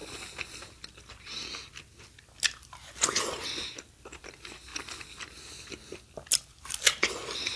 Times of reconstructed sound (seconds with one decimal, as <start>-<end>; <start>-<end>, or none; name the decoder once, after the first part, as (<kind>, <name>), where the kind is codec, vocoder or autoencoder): none